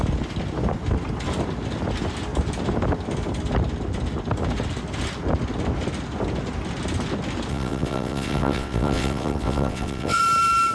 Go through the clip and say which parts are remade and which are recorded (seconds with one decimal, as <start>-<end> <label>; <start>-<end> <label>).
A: 0.0-7.5 recorded; 7.5-10.2 remade; 10.2-10.7 recorded